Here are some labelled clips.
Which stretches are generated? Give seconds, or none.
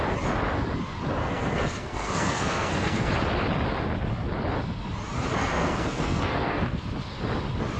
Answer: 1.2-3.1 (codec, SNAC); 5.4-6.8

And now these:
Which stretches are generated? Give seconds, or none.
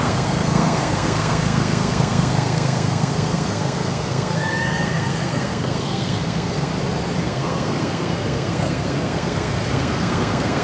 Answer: 0.0-6.7 (codec, SNAC); 7.2-10.6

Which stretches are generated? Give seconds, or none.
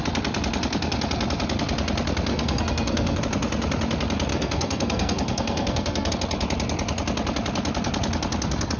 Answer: 2.3-3.2 (codec, SNAC); 4.3-6.1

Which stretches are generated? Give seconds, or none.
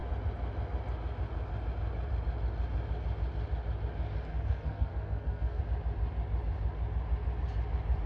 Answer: 4.3-5.6 (codec, SNAC)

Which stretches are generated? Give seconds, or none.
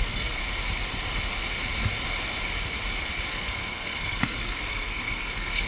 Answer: 0.0-0.4 (codec, SNAC); 3.3-5.7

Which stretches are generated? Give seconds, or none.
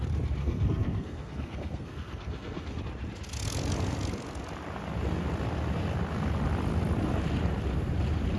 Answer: 0.4-2.8 (codec, SNAC)